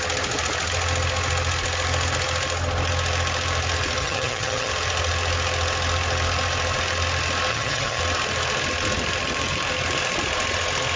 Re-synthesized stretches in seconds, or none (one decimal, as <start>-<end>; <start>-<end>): 4.0-4.7; 7.5-8.0